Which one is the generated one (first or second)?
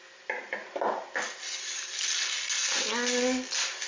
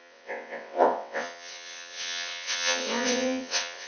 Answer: second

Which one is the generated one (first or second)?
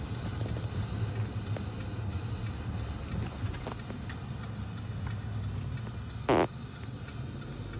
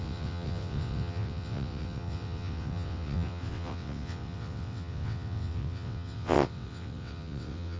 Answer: second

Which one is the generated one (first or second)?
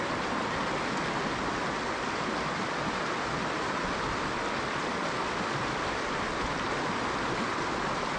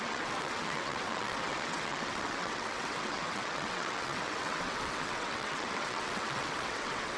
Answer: second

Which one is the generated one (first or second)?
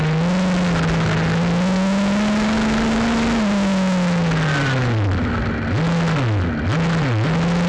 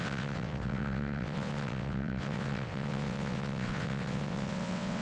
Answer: second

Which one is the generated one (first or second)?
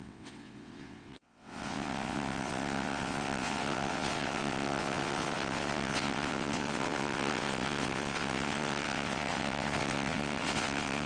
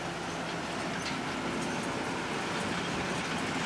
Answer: first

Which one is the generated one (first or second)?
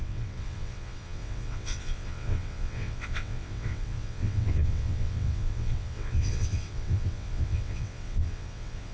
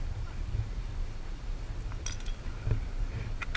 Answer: first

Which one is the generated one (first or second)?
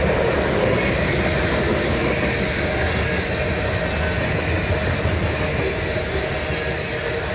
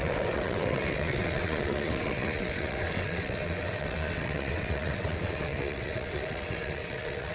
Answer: second